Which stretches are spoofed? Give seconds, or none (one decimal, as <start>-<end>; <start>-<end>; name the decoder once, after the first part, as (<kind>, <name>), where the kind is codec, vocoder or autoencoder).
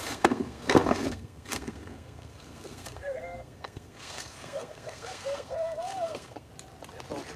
0.0-6.5 (codec, SNAC)